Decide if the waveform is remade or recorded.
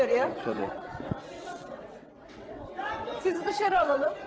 remade